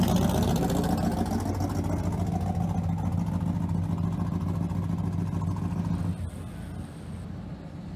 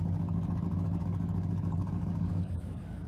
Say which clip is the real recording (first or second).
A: first